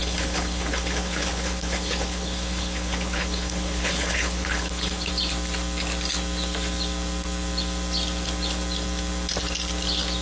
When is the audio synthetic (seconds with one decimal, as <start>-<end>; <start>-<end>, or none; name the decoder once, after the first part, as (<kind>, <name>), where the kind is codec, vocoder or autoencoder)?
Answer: 0.0-5.1 (codec, HILCodec)